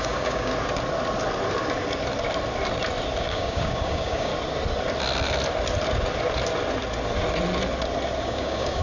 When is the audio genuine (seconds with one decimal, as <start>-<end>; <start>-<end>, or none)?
0.5-3.2; 4.3-8.2